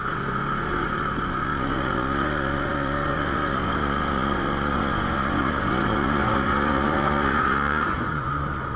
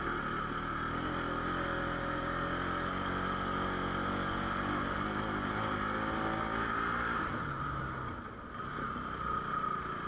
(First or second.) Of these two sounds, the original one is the second